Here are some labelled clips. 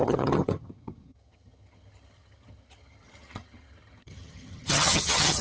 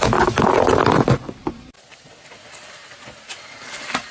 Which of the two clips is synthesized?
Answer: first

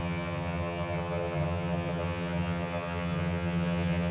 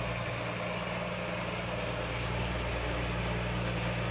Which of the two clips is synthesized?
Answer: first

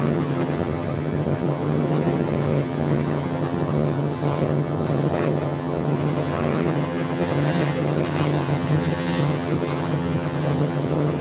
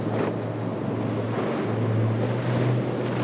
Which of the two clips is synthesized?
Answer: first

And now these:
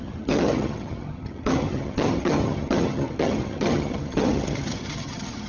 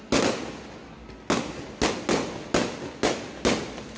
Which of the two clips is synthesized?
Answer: first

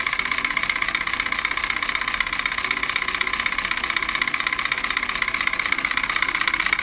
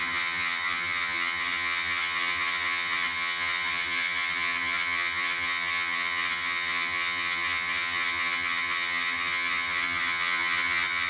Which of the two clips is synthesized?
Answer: second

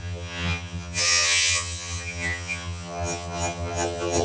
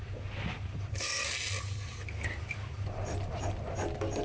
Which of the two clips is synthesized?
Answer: first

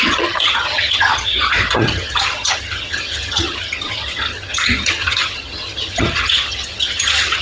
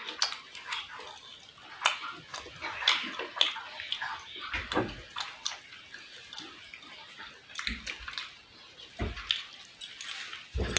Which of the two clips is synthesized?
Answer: first